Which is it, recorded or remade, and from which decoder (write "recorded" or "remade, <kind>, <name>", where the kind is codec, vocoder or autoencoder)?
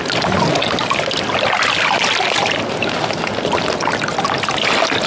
recorded